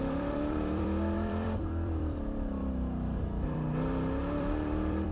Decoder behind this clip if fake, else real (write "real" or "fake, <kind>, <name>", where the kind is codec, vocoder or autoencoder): fake, vocoder, BigVGAN v2